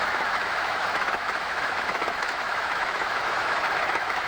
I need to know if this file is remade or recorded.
remade